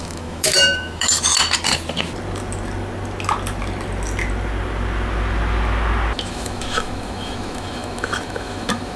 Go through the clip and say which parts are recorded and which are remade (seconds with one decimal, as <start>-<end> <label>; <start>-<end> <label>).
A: 0.0-1.3 remade; 1.3-6.3 recorded; 6.3-9.0 remade